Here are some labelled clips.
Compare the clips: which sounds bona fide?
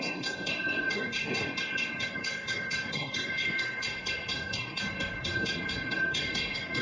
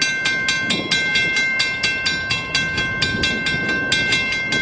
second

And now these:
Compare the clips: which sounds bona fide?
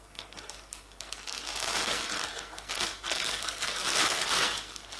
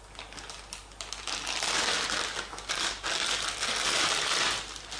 second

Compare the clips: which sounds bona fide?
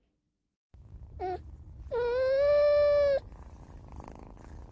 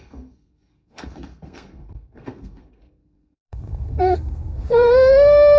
first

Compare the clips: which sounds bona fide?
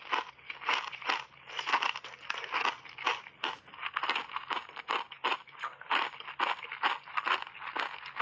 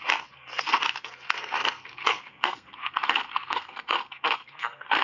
first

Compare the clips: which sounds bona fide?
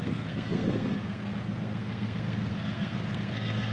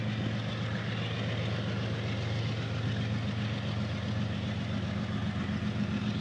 second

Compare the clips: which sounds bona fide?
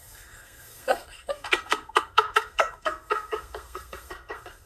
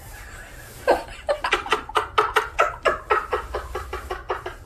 second